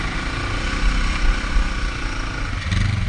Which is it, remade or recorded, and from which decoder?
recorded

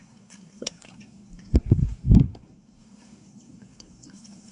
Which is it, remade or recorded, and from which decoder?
remade, codec, SNAC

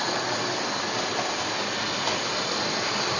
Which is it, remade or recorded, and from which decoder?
recorded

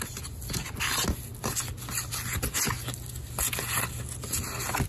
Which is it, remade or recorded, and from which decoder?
recorded